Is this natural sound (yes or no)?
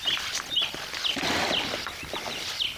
yes